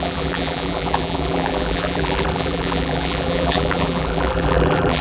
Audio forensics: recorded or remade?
remade